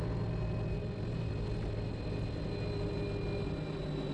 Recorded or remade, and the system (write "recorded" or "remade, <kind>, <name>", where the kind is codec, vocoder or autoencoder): recorded